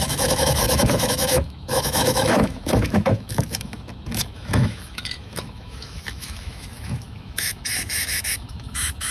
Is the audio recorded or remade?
remade